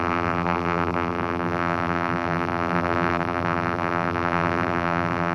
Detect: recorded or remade remade